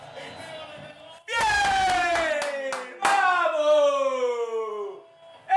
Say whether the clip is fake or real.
real